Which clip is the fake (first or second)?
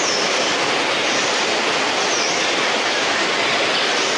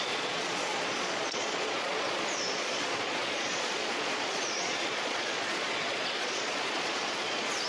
second